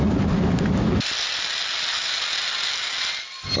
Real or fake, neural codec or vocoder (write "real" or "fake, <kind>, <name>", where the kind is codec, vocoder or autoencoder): real